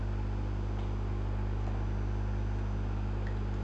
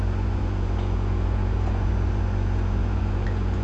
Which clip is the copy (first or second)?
second